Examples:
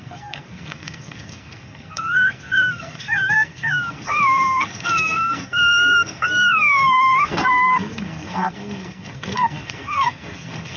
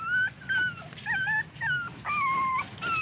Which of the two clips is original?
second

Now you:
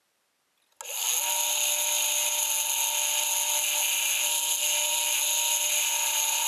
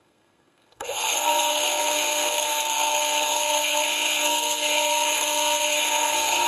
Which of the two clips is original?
first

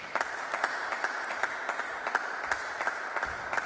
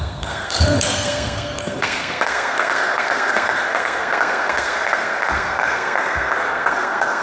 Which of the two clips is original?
first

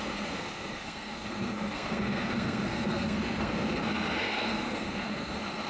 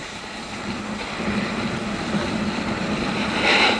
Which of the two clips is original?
second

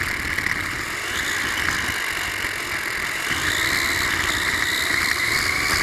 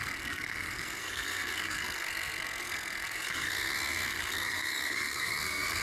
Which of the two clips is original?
first